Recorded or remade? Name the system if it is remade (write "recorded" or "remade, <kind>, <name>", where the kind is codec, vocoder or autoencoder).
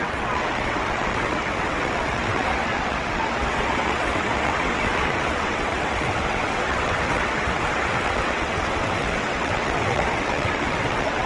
remade, vocoder, WaveNeXt